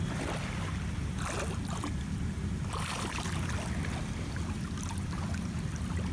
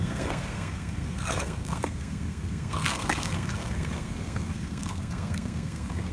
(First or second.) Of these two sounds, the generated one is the second